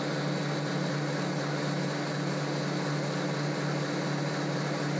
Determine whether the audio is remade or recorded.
recorded